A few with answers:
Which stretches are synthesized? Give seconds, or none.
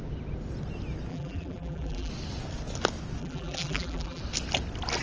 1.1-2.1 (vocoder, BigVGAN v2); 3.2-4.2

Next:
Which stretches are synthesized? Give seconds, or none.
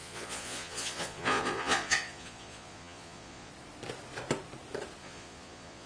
0.0-3.5 (vocoder, Vocos); 5.0-5.9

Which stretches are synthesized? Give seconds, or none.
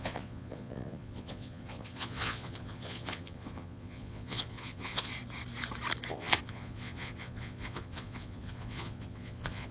0.0-5.1 (vocoder, Vocos); 6.1-9.7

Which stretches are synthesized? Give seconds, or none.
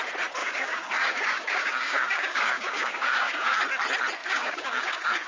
0.4-3.6 (codec, DAC); 4.2-5.3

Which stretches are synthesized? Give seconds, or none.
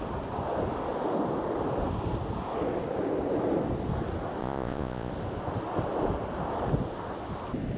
4.4-5.1 (vocoder, Vocos)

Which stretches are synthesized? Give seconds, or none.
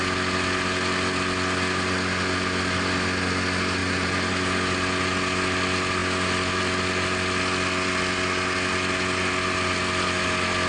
3.8-4.3 (vocoder, BigVGAN v2)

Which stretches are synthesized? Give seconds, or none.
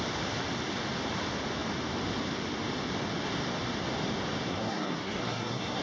4.5-5.8 (codec, SNAC)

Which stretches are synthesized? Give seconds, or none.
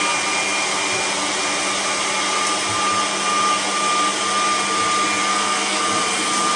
5.3-5.8 (codec, SNAC)